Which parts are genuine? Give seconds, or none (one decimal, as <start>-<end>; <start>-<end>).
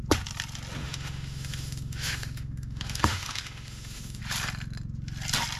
0.0-0.8; 4.2-5.6